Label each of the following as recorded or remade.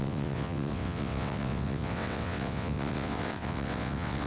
remade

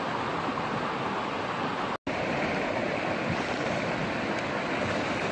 recorded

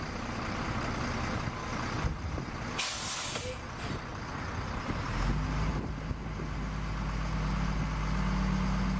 recorded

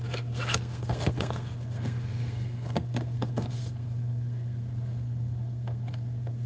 remade